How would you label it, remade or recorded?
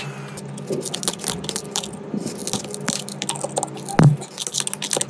recorded